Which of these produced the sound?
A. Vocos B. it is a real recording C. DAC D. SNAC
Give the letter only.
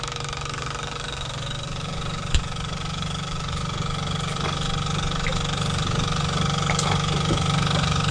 C